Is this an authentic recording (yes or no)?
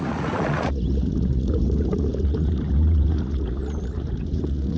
no